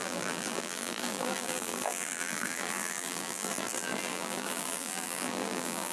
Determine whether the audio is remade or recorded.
remade